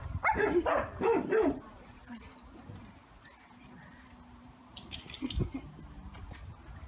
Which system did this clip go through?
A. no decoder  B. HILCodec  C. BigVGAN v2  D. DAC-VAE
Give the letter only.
C